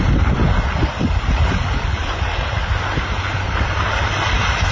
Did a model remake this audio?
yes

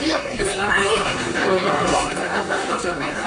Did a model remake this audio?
yes